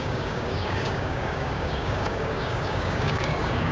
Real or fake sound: fake